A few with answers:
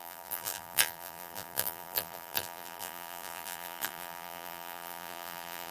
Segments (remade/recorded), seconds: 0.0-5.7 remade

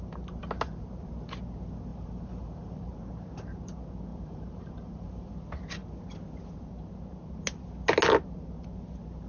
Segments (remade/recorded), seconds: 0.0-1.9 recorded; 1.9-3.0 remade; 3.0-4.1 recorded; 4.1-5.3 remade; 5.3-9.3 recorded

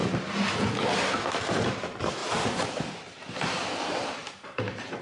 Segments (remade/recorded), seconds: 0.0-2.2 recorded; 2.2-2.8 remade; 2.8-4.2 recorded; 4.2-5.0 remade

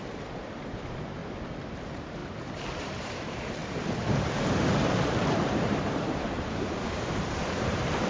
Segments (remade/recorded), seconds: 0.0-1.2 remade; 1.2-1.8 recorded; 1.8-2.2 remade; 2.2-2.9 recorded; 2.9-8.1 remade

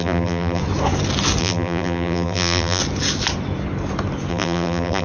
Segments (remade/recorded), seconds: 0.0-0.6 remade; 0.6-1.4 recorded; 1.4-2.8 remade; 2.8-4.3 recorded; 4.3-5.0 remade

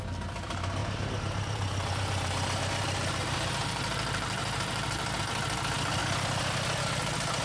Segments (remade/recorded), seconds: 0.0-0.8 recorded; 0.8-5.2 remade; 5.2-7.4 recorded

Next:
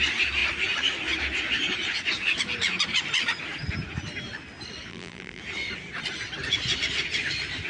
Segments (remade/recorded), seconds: 0.0-4.9 recorded; 4.9-5.4 remade; 5.4-7.7 recorded

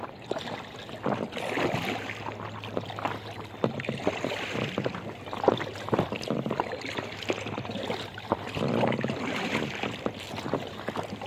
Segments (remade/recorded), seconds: 0.0-8.1 recorded; 8.1-8.7 remade; 8.7-11.3 recorded